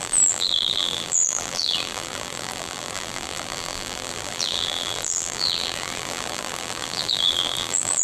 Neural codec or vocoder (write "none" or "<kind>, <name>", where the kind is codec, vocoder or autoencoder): vocoder, BigVGAN v2